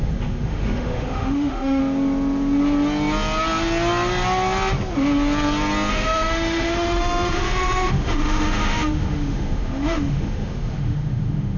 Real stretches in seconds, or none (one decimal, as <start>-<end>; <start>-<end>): 1.8-5.9